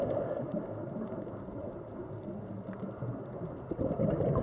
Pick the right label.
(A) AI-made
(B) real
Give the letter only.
B